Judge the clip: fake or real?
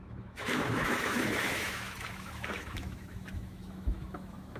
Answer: fake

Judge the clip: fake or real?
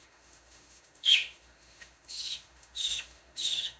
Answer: fake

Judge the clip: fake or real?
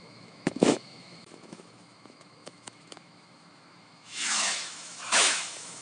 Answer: fake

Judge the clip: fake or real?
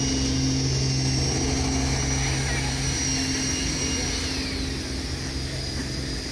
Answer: real